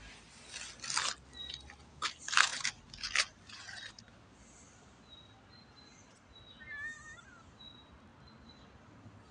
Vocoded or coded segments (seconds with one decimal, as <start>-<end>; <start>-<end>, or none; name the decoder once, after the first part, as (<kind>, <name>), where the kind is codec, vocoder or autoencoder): none